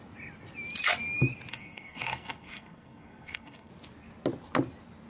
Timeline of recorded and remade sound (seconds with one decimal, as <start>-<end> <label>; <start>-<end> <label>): 0.0-1.5 recorded; 1.5-3.7 remade; 3.7-5.1 recorded